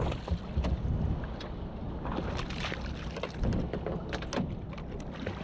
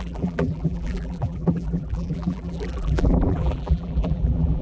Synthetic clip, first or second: second